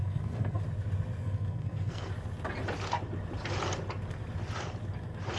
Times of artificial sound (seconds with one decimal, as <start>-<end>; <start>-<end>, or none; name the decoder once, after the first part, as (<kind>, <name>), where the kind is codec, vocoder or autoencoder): 0.0-0.6 (codec, SNAC); 1.2-2.1